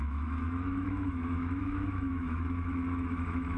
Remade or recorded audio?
remade